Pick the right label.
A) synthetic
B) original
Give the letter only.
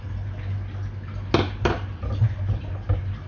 B